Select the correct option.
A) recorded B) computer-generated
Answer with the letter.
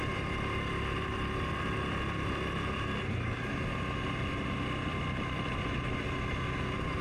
A